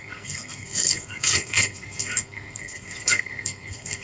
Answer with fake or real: fake